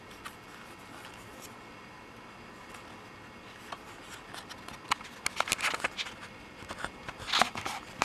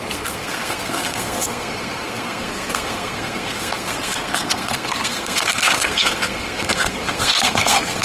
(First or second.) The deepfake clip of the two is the second